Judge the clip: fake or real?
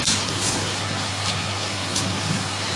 fake